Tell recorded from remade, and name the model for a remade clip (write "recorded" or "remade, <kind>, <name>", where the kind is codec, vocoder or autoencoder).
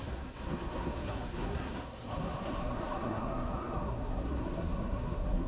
remade, codec, SNAC